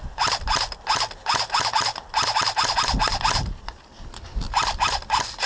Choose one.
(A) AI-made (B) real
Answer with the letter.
B